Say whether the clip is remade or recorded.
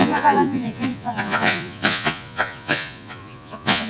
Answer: remade